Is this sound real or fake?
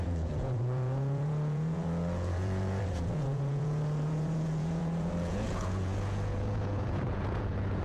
fake